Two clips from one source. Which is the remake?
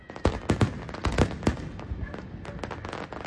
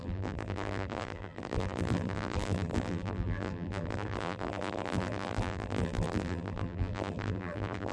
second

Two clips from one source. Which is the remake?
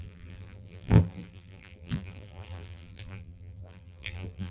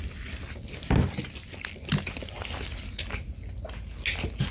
first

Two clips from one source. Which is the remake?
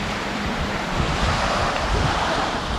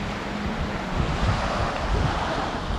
first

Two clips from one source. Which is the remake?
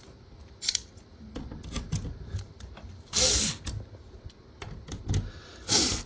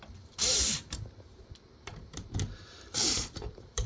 second